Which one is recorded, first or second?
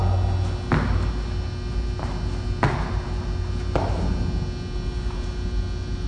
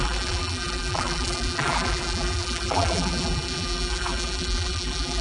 first